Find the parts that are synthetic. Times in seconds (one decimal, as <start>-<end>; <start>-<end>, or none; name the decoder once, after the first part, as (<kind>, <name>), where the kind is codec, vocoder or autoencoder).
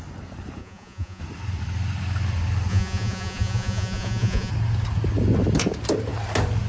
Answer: 0.6-1.2 (vocoder, Vocos); 2.7-4.5